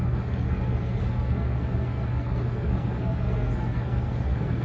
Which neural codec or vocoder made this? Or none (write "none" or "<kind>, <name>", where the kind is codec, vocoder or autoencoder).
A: codec, SNAC